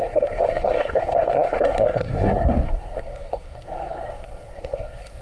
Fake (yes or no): yes